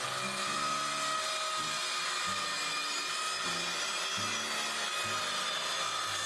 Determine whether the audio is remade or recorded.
recorded